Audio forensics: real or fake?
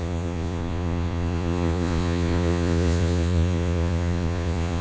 fake